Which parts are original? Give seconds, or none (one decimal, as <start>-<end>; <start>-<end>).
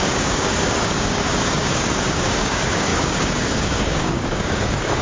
none